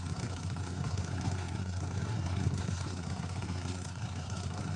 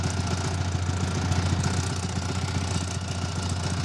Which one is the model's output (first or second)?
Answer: first